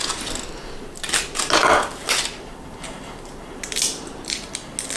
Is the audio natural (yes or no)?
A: yes